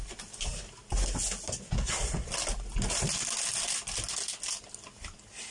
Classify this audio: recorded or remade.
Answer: recorded